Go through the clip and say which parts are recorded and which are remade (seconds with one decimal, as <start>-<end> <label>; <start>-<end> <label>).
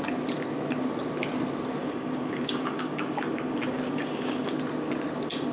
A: 0.0-1.8 recorded; 1.8-4.5 remade; 4.5-5.5 recorded